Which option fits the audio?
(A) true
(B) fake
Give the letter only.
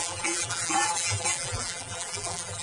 B